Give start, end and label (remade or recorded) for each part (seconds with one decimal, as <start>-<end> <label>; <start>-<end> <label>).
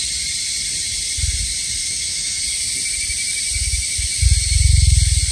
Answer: 0.0-1.8 recorded; 1.8-2.4 remade; 2.4-5.3 recorded